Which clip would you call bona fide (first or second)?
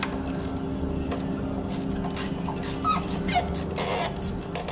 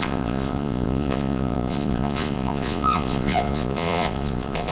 first